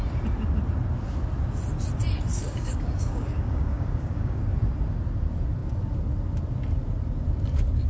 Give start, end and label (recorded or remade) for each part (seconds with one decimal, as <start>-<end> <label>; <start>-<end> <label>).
0.0-2.4 recorded; 2.4-4.4 remade; 4.4-7.9 recorded